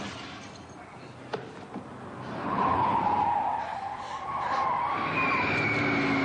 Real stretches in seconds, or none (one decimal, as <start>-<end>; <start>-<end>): 0.0-2.4; 3.0-6.2